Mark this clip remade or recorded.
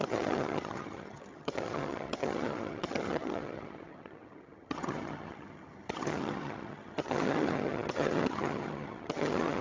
remade